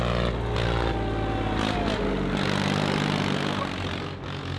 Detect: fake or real real